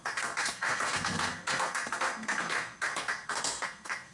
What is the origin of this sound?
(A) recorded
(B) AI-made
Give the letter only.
B